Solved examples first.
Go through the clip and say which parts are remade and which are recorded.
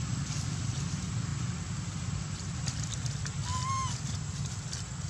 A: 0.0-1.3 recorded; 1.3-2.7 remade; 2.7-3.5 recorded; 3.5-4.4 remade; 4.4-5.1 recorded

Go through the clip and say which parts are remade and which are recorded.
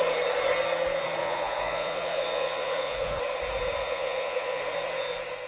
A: 0.0-1.2 recorded; 1.2-3.2 remade; 3.2-3.8 recorded; 3.8-4.6 remade; 4.6-5.5 recorded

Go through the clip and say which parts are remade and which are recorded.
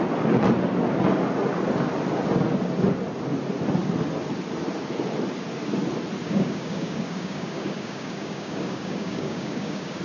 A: 0.0-6.2 recorded; 6.2-10.0 remade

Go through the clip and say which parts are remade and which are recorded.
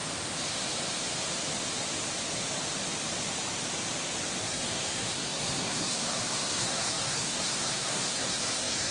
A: 0.0-4.4 recorded; 4.4-8.9 remade